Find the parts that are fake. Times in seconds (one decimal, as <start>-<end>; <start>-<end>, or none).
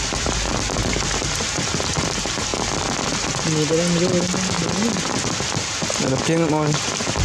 none